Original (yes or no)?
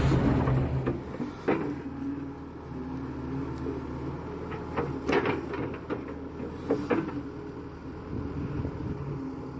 yes